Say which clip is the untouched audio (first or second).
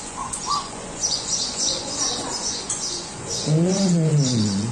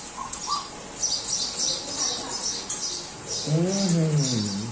second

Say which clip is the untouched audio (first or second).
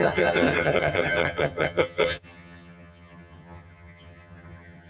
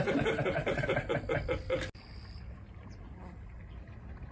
second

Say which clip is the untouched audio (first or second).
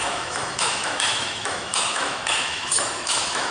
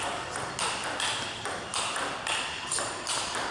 second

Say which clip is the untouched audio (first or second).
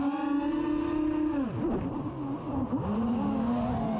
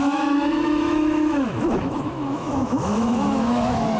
first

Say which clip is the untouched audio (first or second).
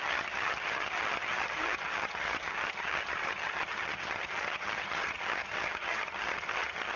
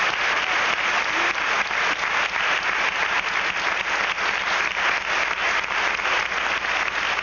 second